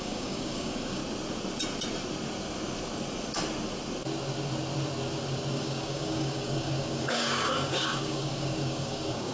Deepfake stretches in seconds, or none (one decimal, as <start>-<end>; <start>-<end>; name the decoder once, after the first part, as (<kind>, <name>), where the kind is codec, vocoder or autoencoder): 0.0-1.0 (codec, DAC); 5.5-9.3